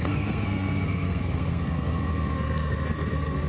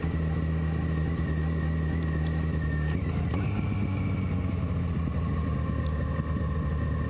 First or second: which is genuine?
second